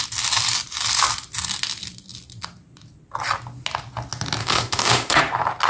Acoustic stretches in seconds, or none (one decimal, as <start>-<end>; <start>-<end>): 0.0-4.4; 5.2-5.7